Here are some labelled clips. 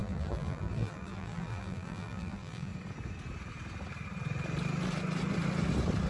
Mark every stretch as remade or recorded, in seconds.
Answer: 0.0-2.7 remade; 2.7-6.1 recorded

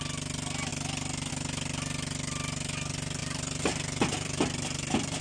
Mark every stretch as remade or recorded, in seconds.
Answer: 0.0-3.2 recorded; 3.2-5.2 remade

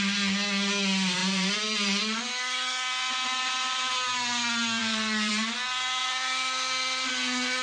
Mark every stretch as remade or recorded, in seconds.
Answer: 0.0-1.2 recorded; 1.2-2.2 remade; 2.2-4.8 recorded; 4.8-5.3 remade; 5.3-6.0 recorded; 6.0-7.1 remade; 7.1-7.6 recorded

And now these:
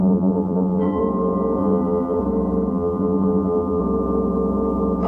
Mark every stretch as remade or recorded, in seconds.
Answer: 0.0-1.0 remade; 1.0-1.6 recorded; 1.6-2.2 remade; 2.2-2.7 recorded; 2.7-3.8 remade; 3.8-5.1 recorded